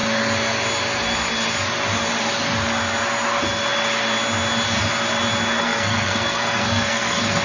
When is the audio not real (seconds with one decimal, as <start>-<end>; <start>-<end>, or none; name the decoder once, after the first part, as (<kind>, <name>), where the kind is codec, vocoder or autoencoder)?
5.6-7.4 (codec, SNAC)

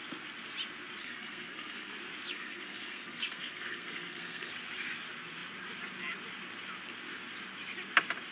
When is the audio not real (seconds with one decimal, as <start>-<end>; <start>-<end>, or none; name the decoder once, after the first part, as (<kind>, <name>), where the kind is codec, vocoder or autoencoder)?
1.0-1.9 (codec, SNAC); 2.3-4.5

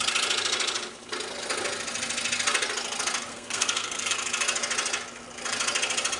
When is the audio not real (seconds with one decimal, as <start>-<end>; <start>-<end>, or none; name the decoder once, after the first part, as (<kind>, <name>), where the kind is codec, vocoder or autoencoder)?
3.3-4.1 (codec, SNAC)

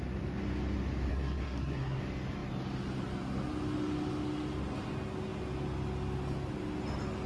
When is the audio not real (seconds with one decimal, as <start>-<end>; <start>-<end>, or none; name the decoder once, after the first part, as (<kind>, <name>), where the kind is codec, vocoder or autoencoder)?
1.1-2.0 (codec, SNAC)

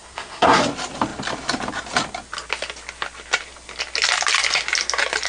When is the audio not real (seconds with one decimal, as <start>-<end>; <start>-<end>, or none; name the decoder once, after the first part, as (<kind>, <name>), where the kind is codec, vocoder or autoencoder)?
0.0-0.6 (codec, SNAC)

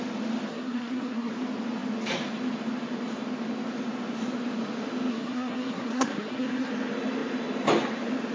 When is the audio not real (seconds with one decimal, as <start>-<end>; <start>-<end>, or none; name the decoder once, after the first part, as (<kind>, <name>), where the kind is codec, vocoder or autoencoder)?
0.5-1.3 (codec, SNAC); 5.1-6.7

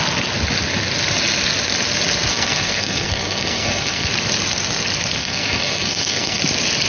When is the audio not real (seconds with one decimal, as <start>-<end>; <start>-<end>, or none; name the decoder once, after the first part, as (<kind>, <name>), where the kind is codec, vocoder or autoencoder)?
2.3-4.1 (codec, SNAC); 5.2-6.4